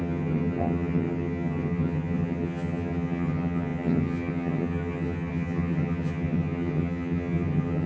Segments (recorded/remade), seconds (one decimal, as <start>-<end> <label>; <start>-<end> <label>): 0.0-7.9 remade